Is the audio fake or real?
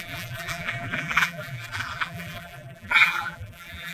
fake